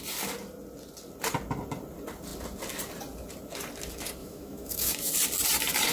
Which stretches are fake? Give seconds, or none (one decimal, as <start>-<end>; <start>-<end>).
4.2-5.1